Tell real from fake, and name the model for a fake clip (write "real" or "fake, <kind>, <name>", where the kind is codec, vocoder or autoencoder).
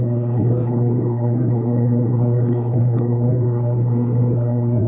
fake, codec, SNAC